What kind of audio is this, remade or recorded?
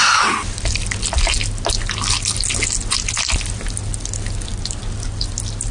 recorded